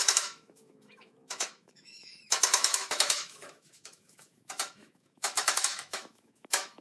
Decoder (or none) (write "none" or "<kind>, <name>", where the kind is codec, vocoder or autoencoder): autoencoder, DAC-VAE